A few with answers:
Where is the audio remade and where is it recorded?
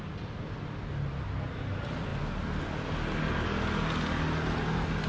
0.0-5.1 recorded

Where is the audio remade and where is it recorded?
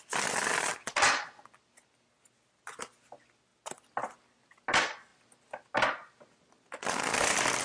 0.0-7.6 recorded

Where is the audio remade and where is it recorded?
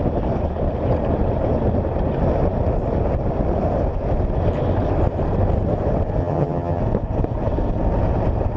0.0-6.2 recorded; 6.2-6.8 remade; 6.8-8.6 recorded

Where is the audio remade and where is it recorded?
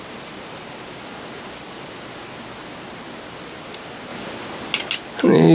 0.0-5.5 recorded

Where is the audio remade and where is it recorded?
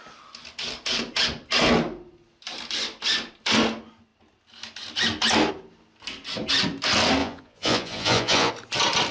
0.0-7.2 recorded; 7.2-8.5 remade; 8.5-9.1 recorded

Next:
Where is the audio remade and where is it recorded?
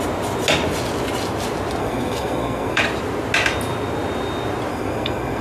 0.0-1.8 recorded; 1.8-2.8 remade; 2.8-4.7 recorded; 4.7-5.4 remade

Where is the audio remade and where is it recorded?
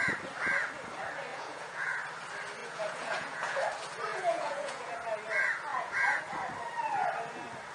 0.0-1.3 recorded; 1.3-2.0 remade; 2.0-2.6 recorded; 2.6-3.6 remade; 3.6-4.1 recorded; 4.1-4.9 remade; 4.9-5.7 recorded; 5.7-6.2 remade; 6.2-7.7 recorded